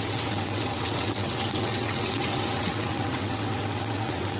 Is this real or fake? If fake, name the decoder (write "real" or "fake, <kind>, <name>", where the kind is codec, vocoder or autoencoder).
fake, vocoder, WaveNeXt